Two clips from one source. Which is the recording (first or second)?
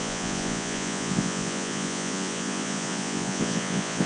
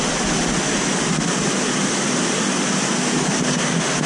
second